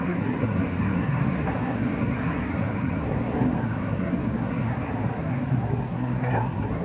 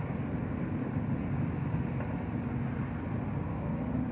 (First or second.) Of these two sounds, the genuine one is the second